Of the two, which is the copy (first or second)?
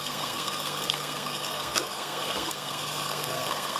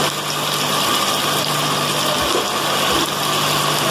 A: first